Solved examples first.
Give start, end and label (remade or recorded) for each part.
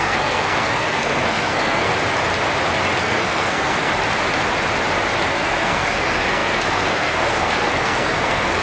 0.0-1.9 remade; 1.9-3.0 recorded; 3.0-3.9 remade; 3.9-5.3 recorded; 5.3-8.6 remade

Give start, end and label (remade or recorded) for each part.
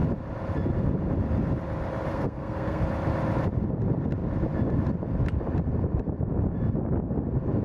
0.0-2.1 recorded; 2.1-2.8 remade; 2.8-7.6 recorded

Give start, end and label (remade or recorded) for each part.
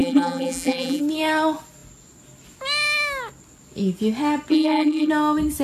0.0-1.0 remade; 1.0-4.5 recorded; 4.5-5.1 remade; 5.1-5.6 recorded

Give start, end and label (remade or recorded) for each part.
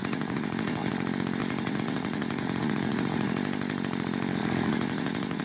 0.0-0.9 remade; 0.9-1.4 recorded; 1.4-3.3 remade; 3.3-4.4 recorded; 4.4-5.4 remade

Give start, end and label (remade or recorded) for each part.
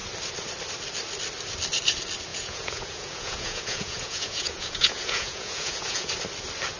0.0-2.3 recorded; 2.3-6.1 remade; 6.1-6.8 recorded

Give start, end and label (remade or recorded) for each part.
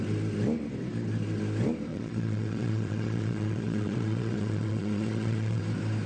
0.0-1.9 recorded; 1.9-5.6 remade; 5.6-6.1 recorded